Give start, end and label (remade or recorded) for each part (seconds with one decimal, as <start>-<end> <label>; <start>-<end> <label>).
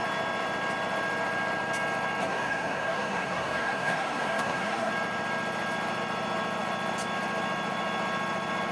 0.0-2.2 recorded; 2.2-4.9 remade; 4.9-8.7 recorded